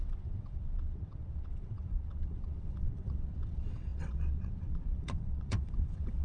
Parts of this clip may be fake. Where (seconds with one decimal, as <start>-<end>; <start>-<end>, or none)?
0.0-6.2